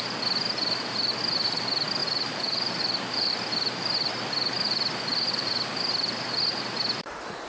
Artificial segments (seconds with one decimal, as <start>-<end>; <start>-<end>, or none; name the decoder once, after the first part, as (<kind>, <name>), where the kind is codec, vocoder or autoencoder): 2.0-3.3 (vocoder, BigVGAN v2); 5.1-5.9